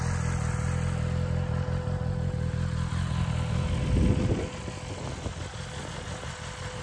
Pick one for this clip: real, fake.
real